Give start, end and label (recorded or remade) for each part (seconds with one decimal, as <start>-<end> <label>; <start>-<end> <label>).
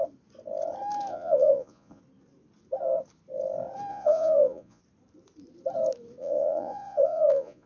0.0-1.1 recorded; 1.1-2.0 remade; 2.0-3.9 recorded; 3.9-4.8 remade; 4.8-6.2 recorded; 6.2-7.7 remade